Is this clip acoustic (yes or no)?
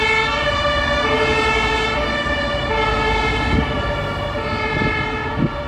yes